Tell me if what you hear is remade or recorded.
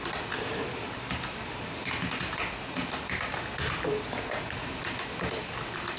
recorded